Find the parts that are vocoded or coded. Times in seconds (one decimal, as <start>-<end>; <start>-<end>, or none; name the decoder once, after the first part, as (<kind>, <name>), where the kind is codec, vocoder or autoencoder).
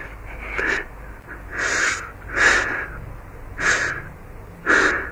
none